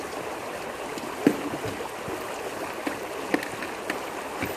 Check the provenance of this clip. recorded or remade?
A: recorded